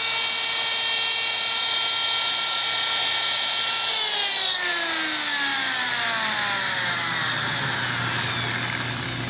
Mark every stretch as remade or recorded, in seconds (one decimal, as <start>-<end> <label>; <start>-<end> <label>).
0.0-5.5 recorded; 5.5-7.7 remade; 7.7-9.3 recorded